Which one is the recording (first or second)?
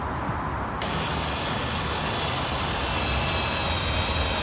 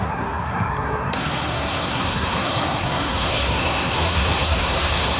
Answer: first